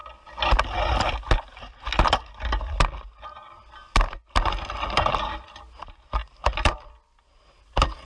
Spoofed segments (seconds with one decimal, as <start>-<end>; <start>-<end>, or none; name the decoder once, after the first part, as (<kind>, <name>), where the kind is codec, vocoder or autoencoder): none